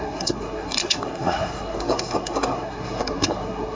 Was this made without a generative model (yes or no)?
no